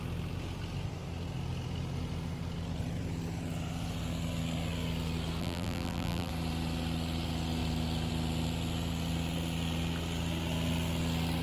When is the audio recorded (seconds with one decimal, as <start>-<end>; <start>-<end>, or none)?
0.0-5.4; 6.3-11.4